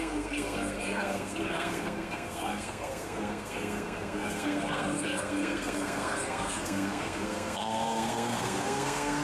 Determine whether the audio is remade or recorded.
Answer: remade